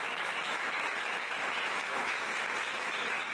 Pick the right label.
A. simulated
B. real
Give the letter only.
A